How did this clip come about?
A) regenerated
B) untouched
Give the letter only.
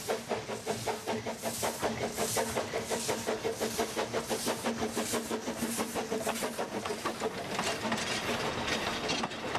B